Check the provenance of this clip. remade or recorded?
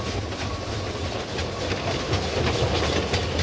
recorded